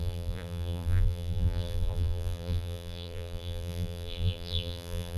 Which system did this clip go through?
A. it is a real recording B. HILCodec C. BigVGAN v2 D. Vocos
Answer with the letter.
C